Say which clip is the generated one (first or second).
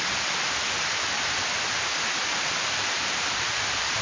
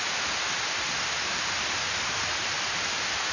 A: first